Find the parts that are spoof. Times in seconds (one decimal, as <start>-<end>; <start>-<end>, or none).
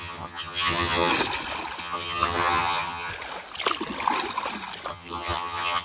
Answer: 0.0-1.1; 1.8-3.1; 4.9-5.8